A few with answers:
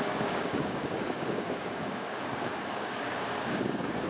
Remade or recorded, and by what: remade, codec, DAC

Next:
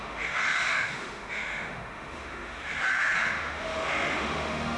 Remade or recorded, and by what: remade, autoencoder, DAC-VAE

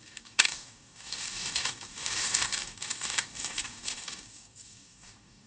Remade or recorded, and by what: remade, codec, DAC